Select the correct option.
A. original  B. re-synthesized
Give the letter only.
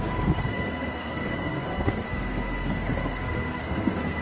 B